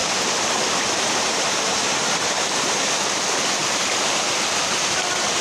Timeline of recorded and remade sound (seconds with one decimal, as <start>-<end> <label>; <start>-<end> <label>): 0.0-3.2 remade; 3.2-3.6 recorded; 3.6-4.3 remade; 4.3-5.4 recorded